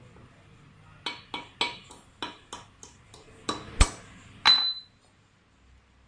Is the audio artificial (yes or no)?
no